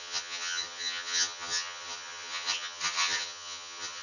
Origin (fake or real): fake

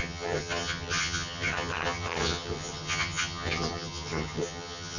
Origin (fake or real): fake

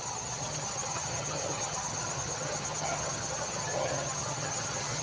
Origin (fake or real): fake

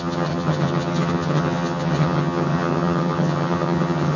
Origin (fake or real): fake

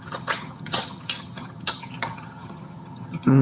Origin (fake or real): fake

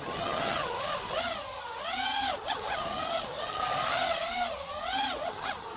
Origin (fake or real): fake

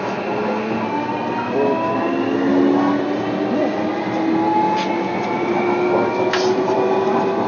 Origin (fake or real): real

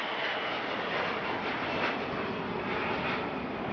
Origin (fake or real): real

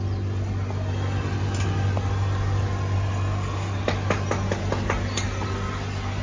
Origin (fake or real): real